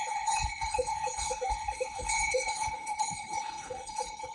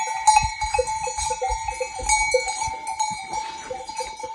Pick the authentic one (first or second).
second